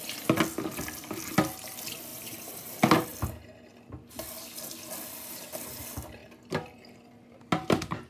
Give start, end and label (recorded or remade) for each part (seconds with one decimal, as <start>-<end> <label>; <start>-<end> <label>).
0.0-2.1 recorded; 2.1-2.8 remade; 2.8-8.1 recorded